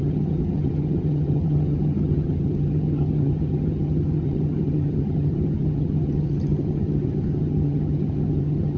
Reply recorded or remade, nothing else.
remade